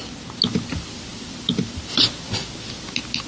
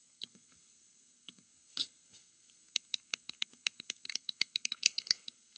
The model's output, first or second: second